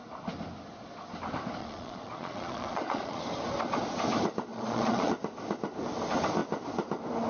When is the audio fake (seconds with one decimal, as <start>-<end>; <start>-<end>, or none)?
1.6-3.2; 4.5-5.1